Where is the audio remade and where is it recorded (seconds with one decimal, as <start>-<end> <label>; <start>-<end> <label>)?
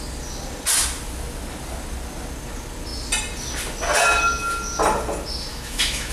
0.0-5.5 recorded; 5.5-6.1 remade